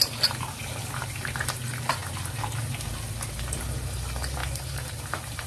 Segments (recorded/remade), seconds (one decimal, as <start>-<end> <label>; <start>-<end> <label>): 0.0-4.4 recorded; 4.4-5.5 remade